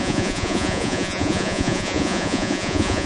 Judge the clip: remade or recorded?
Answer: remade